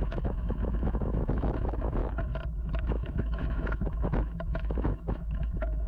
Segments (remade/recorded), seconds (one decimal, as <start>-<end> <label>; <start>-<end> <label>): 0.0-2.0 remade; 2.0-2.7 recorded; 2.7-5.9 remade